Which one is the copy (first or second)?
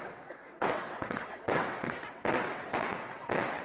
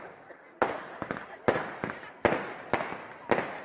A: first